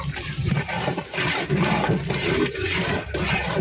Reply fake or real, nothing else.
fake